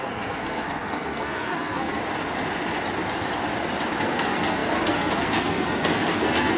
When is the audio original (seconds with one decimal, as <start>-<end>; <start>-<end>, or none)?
2.0-4.0